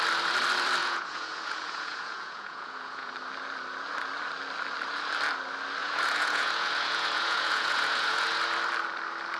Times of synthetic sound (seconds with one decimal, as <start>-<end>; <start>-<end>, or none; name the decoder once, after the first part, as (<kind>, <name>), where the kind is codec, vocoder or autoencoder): 0.8-3.1 (vocoder, Vocos); 5.8-8.4